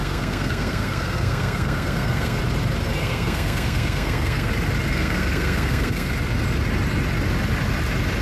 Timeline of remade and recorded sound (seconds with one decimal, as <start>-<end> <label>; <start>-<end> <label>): 0.0-2.4 remade; 2.4-3.0 recorded; 3.0-4.5 remade; 4.5-4.9 recorded; 4.9-6.1 remade; 6.1-8.2 recorded

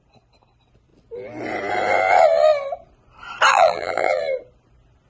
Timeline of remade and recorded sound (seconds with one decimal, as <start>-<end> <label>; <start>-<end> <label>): 0.0-3.5 recorded; 3.5-4.2 remade; 4.2-5.1 recorded